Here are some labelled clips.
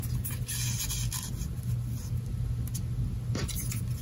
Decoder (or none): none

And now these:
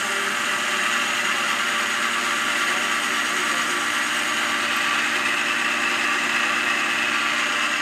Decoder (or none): none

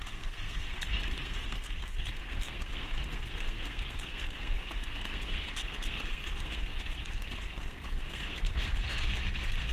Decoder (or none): codec, SNAC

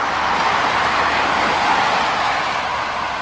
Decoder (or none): none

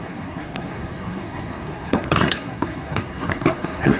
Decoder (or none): codec, SNAC